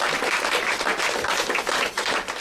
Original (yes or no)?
yes